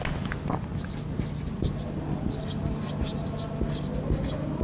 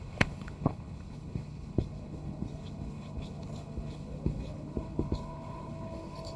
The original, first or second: first